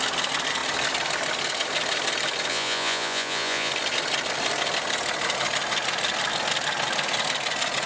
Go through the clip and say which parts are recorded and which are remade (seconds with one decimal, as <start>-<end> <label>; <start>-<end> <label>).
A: 0.0-2.5 recorded; 2.5-3.7 remade; 3.7-7.9 recorded